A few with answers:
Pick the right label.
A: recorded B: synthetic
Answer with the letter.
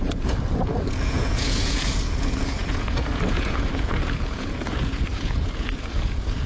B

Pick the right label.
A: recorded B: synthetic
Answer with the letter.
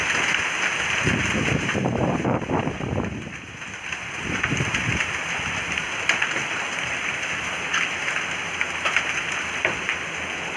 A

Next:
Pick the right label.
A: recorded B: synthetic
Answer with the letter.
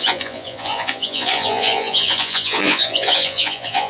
B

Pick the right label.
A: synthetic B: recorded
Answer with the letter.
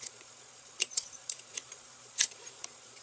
A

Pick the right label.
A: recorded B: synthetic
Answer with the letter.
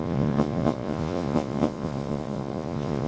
B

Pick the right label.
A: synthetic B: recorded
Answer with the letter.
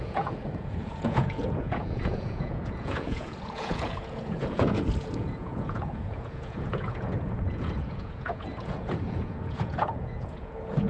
A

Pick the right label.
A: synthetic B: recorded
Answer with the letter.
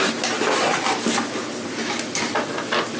B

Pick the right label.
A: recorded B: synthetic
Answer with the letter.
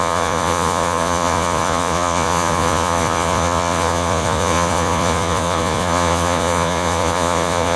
B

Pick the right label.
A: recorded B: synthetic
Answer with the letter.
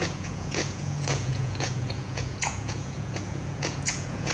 B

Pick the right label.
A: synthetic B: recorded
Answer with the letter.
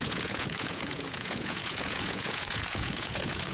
A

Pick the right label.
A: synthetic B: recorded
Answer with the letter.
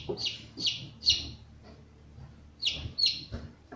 B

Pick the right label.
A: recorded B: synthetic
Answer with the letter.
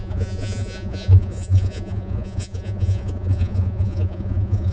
B